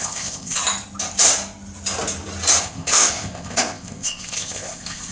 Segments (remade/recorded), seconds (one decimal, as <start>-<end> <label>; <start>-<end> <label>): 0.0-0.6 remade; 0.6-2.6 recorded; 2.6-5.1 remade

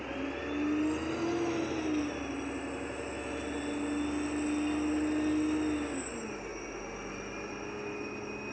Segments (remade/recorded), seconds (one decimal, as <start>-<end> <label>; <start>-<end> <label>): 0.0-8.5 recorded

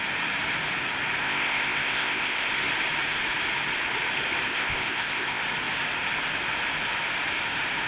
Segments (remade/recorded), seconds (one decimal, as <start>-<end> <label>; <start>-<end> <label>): 0.0-1.2 recorded; 1.2-2.5 remade; 2.5-4.5 recorded; 4.5-5.4 remade; 5.4-7.9 recorded

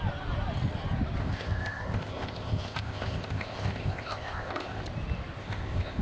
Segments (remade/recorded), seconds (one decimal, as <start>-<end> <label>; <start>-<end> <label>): 0.0-1.2 recorded; 1.2-4.8 remade; 4.8-5.4 recorded; 5.4-6.0 remade